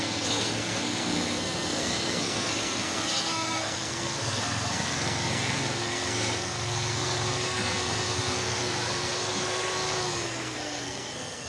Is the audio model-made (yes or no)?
yes